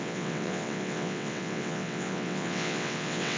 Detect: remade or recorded remade